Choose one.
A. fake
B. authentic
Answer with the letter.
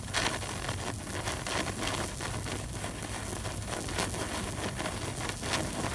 B